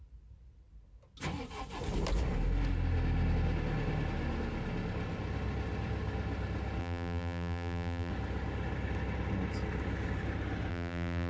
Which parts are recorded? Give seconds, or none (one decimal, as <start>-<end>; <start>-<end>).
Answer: 0.0-6.8; 8.1-10.7